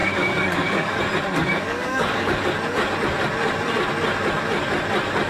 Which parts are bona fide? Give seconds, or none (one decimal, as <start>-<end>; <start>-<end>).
1.0-1.4; 2.4-5.3